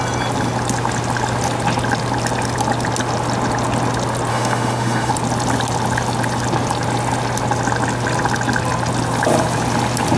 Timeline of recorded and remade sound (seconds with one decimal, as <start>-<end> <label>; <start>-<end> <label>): 0.0-4.3 recorded; 4.3-5.1 remade; 5.1-10.2 recorded